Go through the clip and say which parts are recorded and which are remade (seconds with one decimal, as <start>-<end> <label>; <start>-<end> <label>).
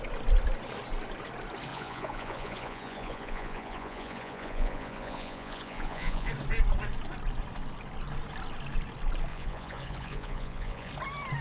0.0-1.7 recorded; 1.7-6.3 remade; 6.3-9.3 recorded; 9.3-10.9 remade; 10.9-11.4 recorded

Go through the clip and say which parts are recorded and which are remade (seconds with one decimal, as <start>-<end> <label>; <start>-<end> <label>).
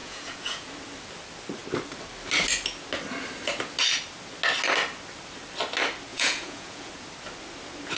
0.0-0.7 remade; 0.7-6.1 recorded; 6.1-6.9 remade; 6.9-8.0 recorded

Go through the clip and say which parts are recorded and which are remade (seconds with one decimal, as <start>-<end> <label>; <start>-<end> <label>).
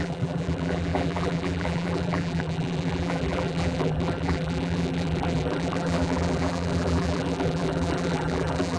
0.0-8.8 remade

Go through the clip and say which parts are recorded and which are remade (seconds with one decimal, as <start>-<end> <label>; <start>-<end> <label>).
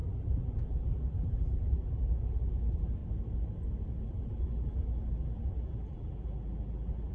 0.0-3.0 remade; 3.0-4.0 recorded; 4.0-7.1 remade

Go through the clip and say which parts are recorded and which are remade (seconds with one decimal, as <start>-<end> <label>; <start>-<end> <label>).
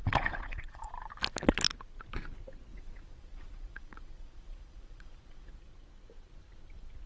0.0-0.9 remade; 0.9-2.7 recorded; 2.7-5.5 remade; 5.5-7.1 recorded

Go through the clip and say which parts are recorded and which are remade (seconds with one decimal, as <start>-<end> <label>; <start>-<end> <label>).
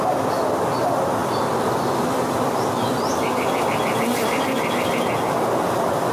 0.0-6.1 recorded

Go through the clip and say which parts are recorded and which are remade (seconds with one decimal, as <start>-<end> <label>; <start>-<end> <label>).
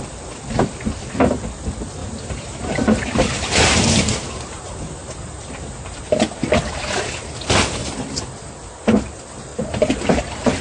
0.0-2.0 recorded; 2.0-6.0 remade; 6.0-9.5 recorded; 9.5-10.6 remade